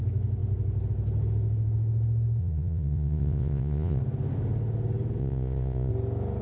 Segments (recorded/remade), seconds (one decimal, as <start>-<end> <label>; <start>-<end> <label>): 0.0-2.4 recorded; 2.4-4.0 remade; 4.0-5.2 recorded; 5.2-5.9 remade; 5.9-6.4 recorded